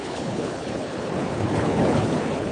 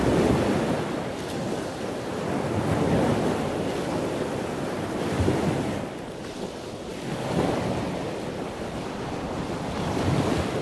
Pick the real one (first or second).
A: second